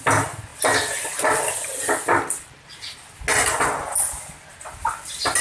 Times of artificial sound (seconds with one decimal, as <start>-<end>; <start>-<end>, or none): none